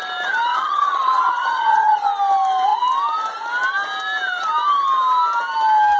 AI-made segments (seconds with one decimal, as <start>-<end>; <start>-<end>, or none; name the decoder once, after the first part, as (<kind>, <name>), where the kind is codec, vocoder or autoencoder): 0.5-2.1 (vocoder, HiFi-GAN)